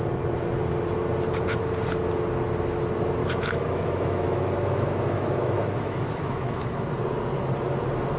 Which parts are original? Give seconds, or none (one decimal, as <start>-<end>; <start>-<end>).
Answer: 0.0-3.2; 6.8-8.2